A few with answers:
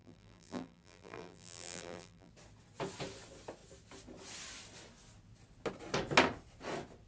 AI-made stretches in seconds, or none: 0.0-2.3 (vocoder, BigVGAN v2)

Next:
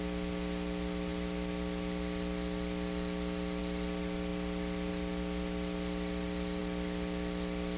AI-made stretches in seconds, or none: none

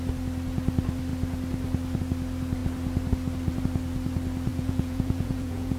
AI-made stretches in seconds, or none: 4.5-5.8 (vocoder, Vocos)

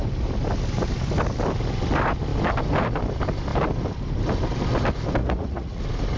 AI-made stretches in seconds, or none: 5.2-5.8 (vocoder, Vocos)